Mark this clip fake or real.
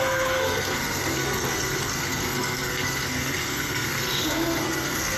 fake